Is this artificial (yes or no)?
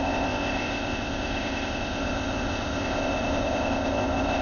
yes